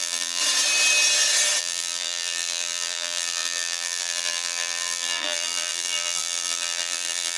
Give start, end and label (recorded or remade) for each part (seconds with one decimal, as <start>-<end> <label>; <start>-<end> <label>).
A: 0.0-0.4 remade; 0.4-1.6 recorded; 1.6-7.4 remade